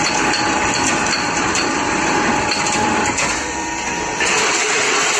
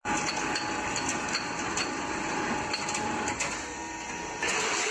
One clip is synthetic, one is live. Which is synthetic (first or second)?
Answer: first